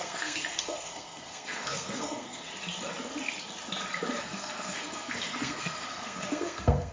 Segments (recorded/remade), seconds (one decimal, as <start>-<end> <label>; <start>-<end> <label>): 0.0-2.5 remade; 2.5-4.2 recorded; 4.2-6.9 remade